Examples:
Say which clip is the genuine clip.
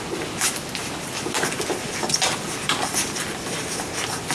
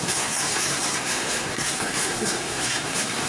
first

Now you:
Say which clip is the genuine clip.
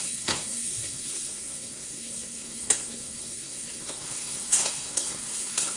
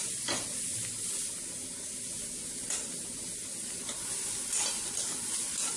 second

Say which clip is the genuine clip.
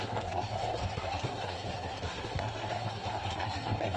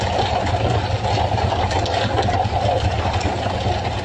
second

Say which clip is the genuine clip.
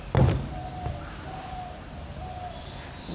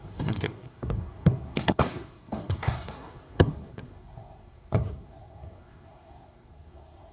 first